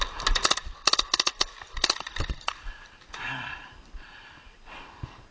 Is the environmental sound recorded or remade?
recorded